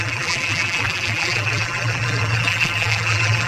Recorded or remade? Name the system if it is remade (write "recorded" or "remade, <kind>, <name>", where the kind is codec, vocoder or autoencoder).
remade, vocoder, BigVGAN v2